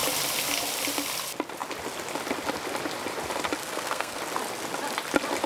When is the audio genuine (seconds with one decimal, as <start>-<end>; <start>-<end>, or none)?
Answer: 0.0-3.6; 4.2-5.5